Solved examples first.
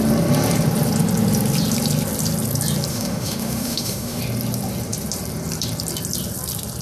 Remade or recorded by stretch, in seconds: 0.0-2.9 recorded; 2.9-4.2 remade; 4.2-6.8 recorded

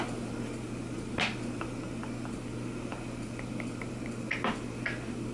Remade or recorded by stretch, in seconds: 0.0-5.3 recorded

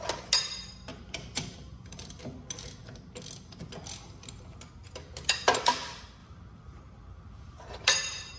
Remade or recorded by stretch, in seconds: 0.0-0.9 recorded; 0.9-2.2 remade; 2.2-6.2 recorded; 6.2-8.4 remade

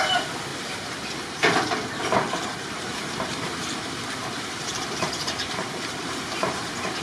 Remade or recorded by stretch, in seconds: 0.0-0.5 recorded; 0.5-2.0 remade; 2.0-2.5 recorded; 2.5-7.0 remade

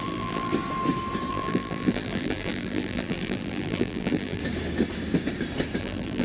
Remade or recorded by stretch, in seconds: 0.0-0.5 remade; 0.5-1.3 recorded; 1.3-4.4 remade; 4.4-5.8 recorded; 5.8-6.2 remade

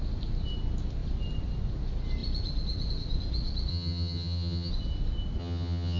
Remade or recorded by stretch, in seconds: 0.0-3.7 recorded; 3.7-4.7 remade; 4.7-5.4 recorded; 5.4-6.0 remade